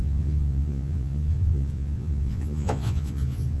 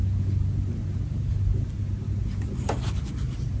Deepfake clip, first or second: first